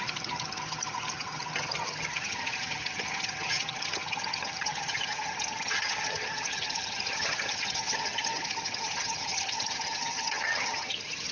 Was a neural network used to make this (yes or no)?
yes